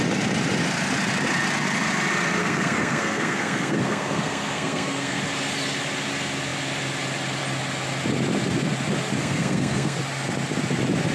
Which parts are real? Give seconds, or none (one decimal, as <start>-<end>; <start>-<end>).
0.0-2.4; 5.2-9.2; 10.0-11.1